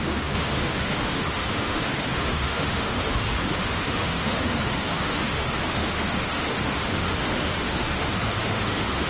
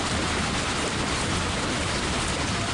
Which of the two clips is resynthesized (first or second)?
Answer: first